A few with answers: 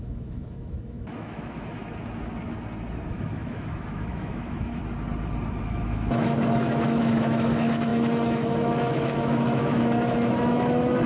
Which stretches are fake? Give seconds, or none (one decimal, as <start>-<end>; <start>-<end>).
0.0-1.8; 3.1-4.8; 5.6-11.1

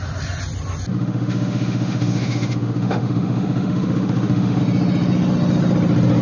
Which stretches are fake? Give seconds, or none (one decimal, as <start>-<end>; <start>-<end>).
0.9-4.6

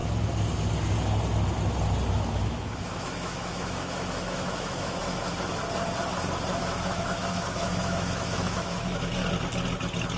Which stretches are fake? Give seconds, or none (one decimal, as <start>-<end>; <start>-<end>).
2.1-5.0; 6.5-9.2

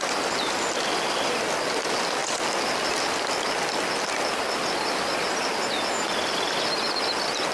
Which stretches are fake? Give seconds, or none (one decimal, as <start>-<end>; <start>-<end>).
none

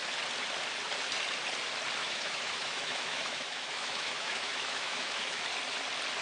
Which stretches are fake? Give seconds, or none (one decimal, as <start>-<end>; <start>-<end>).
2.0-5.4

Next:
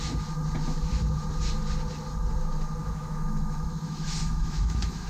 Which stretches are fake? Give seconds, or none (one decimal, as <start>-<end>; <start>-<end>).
2.8-5.1

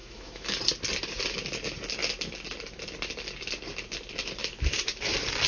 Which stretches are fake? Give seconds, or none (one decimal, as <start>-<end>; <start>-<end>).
0.0-0.6; 4.4-5.0